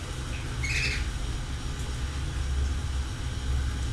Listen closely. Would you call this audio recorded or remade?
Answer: recorded